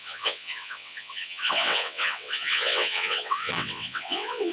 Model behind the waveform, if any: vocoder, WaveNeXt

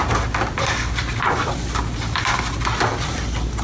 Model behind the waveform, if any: none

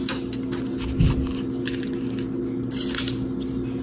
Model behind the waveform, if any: none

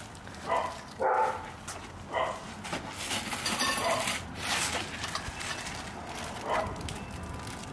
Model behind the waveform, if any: none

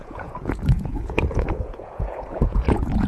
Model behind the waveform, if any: vocoder, Vocos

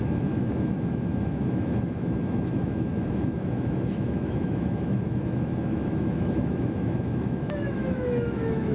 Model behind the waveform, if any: autoencoder, DAC-VAE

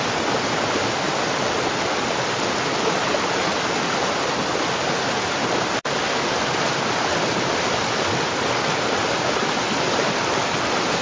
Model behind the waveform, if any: none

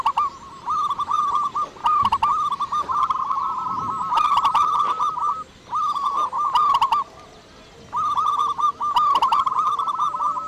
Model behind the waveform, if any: none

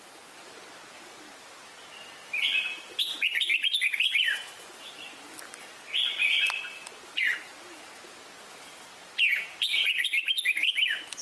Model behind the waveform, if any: none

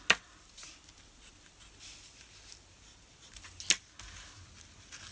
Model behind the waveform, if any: none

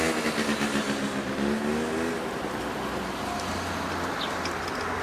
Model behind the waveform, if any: none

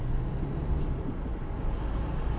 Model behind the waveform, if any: none